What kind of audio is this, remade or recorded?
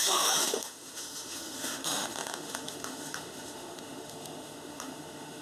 remade